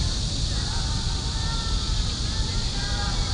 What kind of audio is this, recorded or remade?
recorded